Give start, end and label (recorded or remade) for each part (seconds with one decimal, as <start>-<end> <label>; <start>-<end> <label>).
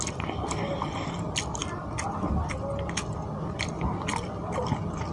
0.0-5.1 recorded